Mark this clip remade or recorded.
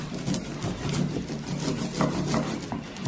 recorded